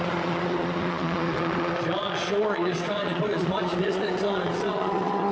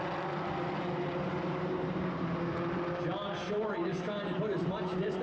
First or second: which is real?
second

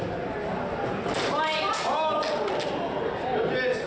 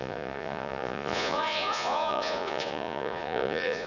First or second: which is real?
first